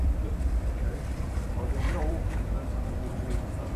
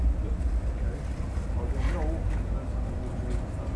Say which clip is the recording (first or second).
second